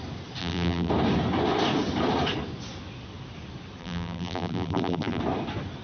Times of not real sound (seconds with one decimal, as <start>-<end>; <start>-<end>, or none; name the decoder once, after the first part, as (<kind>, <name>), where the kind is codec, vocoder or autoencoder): 0.4-0.9 (vocoder, BigVGAN v2); 3.8-5.2